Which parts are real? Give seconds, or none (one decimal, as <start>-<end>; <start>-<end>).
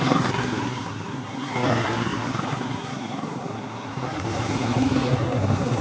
none